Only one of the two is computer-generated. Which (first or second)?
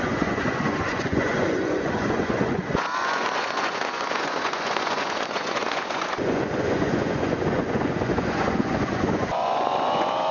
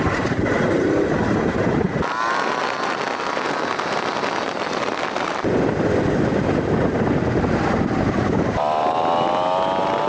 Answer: first